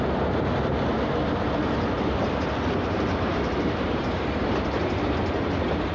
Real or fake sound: real